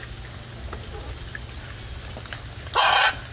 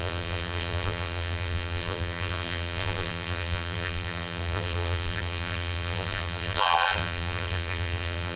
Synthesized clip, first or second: second